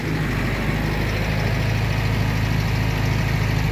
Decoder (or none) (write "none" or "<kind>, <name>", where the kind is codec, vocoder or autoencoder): none